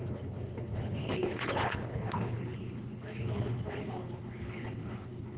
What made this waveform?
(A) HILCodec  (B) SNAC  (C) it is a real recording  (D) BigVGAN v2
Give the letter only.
A